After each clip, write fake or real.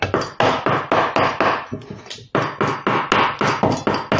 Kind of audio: real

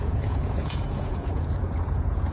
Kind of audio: fake